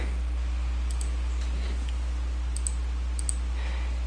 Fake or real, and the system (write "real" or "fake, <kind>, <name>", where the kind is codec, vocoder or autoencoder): real